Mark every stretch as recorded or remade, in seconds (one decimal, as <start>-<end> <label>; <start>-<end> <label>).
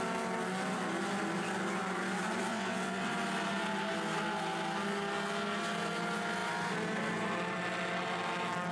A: 0.0-2.5 recorded; 2.5-3.1 remade; 3.1-8.7 recorded